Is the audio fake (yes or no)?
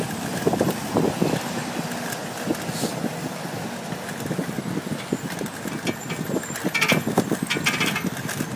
no